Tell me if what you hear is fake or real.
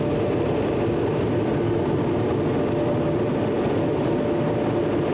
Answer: real